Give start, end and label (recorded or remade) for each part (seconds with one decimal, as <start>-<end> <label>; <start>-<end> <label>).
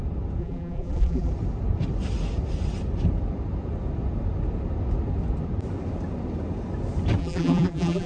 0.0-0.4 recorded; 0.4-1.3 remade; 1.3-7.2 recorded; 7.2-8.1 remade